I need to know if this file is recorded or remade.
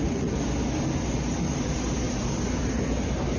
recorded